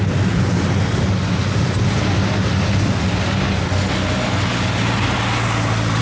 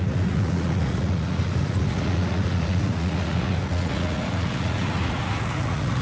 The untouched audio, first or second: first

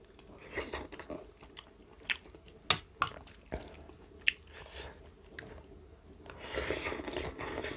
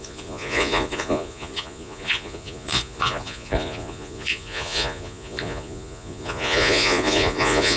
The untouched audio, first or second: first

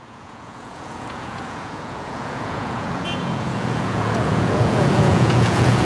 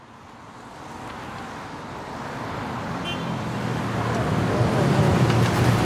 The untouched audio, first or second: second